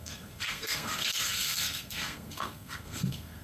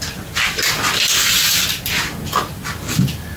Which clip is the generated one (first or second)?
first